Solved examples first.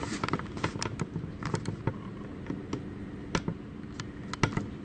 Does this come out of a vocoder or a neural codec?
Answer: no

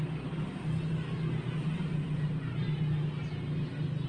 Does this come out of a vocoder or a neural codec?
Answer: no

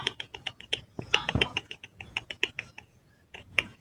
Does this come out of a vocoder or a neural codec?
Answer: yes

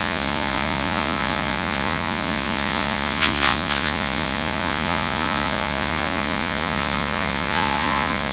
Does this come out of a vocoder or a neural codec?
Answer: yes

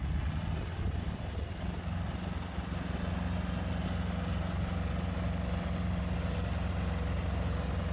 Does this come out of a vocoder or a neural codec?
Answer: no